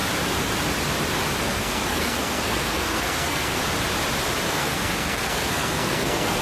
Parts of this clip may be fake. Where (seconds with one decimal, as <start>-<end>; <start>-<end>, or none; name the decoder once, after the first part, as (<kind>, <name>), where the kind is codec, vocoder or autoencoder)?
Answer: 1.4-3.6 (codec, SNAC); 4.5-6.4